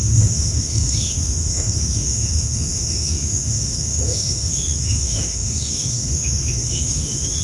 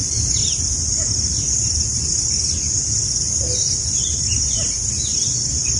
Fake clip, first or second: first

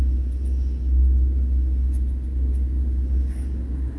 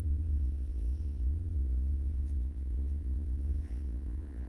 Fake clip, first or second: second